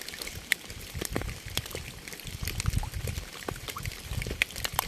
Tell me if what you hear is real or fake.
fake